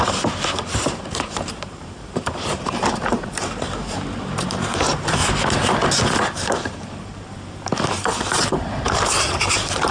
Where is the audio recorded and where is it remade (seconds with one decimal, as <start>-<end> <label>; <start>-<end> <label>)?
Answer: 0.0-5.2 remade; 5.2-6.2 recorded; 6.2-9.9 remade